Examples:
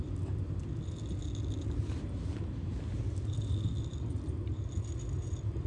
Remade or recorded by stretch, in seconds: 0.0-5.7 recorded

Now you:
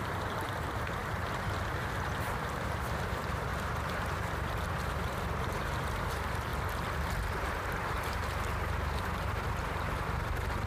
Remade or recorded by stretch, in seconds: 0.0-6.5 remade; 6.5-7.3 recorded; 7.3-10.7 remade

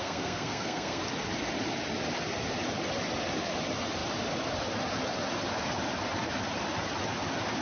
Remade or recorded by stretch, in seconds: 0.0-1.0 remade; 1.0-7.6 recorded

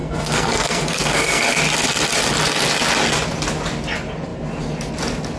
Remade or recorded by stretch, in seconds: 0.0-1.6 remade; 1.6-5.4 recorded

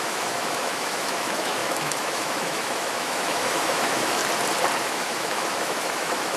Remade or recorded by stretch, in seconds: 0.0-4.2 remade; 4.2-4.8 recorded; 4.8-6.4 remade

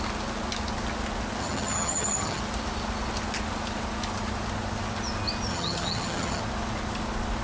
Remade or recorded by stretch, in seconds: 0.0-1.4 recorded; 1.4-2.4 remade; 2.4-5.5 recorded; 5.5-6.4 remade; 6.4-7.4 recorded